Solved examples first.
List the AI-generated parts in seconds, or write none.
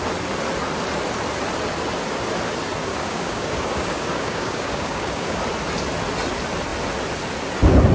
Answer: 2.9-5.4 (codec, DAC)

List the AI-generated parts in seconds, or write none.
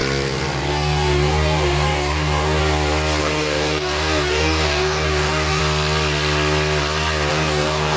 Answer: 0.7-2.6 (codec, DAC); 3.2-5.6; 7.3-8.0